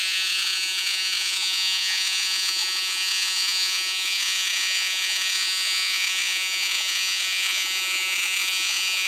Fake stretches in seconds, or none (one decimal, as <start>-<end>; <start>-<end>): 0.0-9.1